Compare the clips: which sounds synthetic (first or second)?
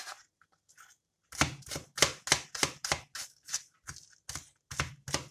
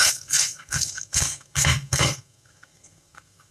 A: second